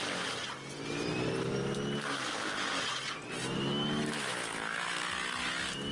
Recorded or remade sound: recorded